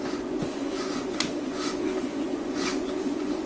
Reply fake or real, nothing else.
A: fake